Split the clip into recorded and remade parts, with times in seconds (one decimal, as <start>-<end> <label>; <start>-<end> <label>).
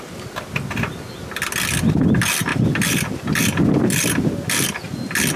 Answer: 0.0-5.4 recorded